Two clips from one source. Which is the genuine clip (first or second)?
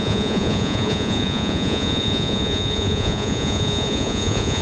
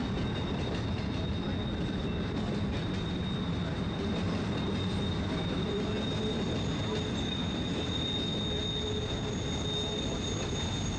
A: second